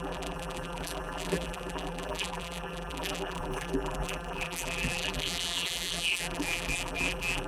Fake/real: fake